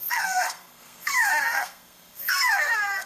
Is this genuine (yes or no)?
no